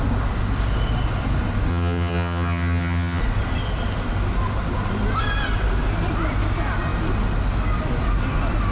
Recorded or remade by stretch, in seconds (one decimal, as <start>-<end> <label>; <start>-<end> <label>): 0.0-1.7 recorded; 1.7-3.2 remade; 3.2-8.7 recorded